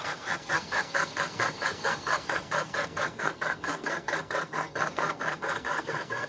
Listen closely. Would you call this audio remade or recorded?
remade